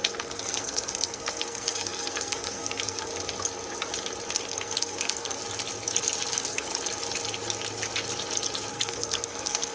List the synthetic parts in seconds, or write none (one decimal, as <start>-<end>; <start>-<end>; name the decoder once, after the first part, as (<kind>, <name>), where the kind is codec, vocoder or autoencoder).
0.0-3.1 (codec, SNAC); 4.3-5.4; 6.3-6.7; 8.7-9.7